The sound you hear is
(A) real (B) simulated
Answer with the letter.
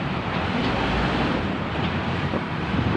B